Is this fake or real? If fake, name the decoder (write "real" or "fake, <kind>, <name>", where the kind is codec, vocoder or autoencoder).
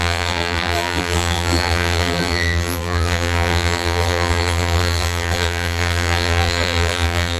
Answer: fake, vocoder, BigVGAN v2